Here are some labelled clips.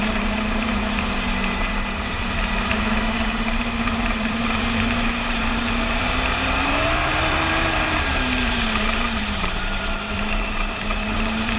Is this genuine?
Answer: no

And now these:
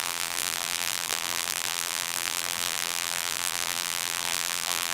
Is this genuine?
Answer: no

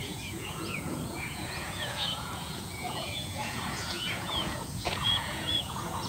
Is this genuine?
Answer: no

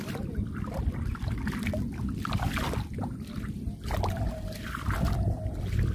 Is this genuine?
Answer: yes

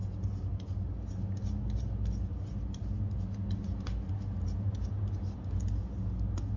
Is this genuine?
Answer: yes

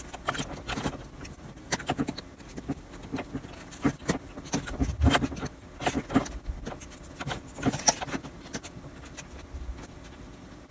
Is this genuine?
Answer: yes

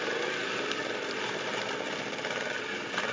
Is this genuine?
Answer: yes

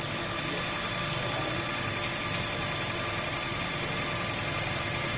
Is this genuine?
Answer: yes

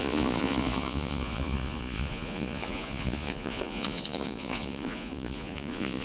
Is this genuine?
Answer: no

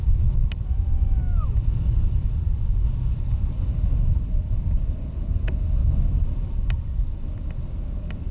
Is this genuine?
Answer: yes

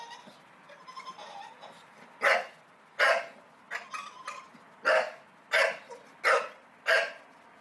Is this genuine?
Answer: yes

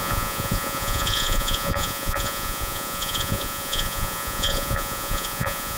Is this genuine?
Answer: no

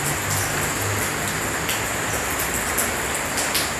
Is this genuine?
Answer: yes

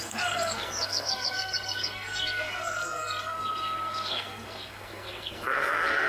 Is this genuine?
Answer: no